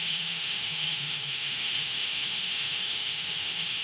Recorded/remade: remade